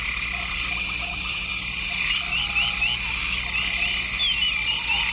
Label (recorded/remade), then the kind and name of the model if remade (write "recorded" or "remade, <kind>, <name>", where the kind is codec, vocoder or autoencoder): recorded